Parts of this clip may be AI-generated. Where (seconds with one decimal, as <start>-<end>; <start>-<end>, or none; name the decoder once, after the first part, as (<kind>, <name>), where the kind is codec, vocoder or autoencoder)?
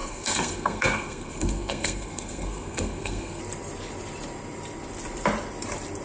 0.0-3.4 (codec, SNAC)